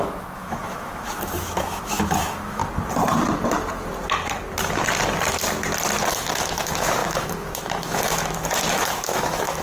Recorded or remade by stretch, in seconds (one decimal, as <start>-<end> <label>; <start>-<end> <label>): 0.0-2.6 remade; 2.6-6.1 recorded; 6.1-9.6 remade